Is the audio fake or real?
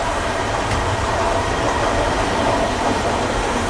fake